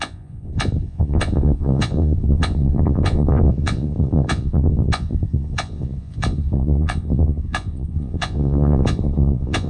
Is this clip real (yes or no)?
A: no